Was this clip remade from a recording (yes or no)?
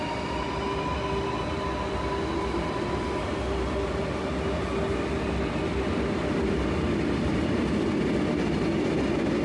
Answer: no